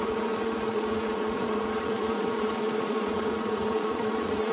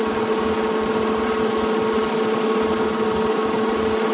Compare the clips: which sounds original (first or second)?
second